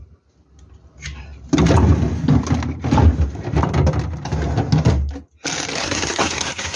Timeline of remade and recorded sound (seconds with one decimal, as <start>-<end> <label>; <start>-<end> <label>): 0.0-5.8 recorded; 5.8-6.8 remade

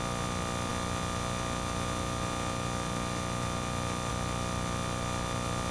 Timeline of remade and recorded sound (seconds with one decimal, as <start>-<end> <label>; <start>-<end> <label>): 0.0-5.7 recorded

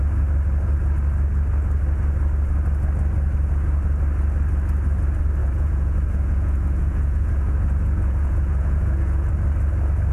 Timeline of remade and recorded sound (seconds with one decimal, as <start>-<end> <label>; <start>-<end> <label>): 0.0-5.4 recorded; 5.4-9.3 remade; 9.3-10.1 recorded

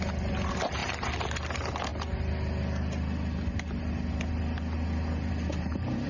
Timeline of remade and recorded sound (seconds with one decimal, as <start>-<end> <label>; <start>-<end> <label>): 0.0-6.1 recorded

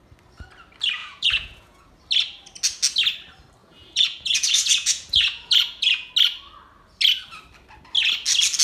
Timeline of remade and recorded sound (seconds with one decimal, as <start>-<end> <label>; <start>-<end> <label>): 0.0-1.0 recorded; 1.0-1.9 remade; 1.9-3.6 recorded; 3.6-6.1 remade; 6.1-8.6 recorded

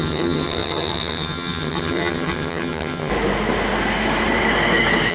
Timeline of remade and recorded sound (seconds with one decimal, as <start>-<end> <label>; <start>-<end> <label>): 0.0-3.1 remade; 3.1-5.1 recorded

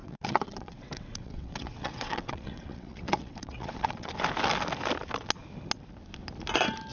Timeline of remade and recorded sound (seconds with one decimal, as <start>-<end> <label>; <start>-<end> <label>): 0.0-4.1 remade; 4.1-6.9 recorded

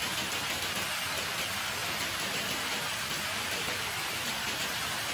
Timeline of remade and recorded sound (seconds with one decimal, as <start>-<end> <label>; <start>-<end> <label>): 0.0-1.8 recorded; 1.8-5.1 remade